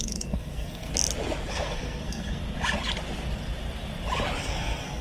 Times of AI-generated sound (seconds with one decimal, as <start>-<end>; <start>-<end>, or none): 0.0-0.9; 1.5-2.4; 4.4-5.0